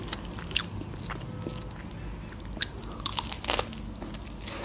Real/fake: real